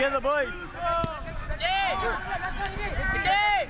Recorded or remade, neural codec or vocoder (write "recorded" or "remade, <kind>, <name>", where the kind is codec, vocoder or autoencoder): recorded